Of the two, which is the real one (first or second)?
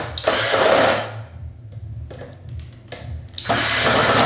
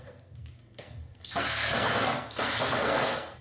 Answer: first